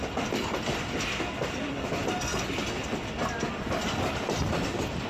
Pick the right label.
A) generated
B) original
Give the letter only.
B